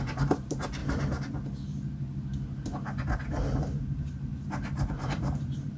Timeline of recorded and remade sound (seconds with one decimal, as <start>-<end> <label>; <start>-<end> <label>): 0.0-0.8 remade; 0.8-3.6 recorded; 3.6-4.3 remade; 4.3-4.9 recorded; 4.9-5.8 remade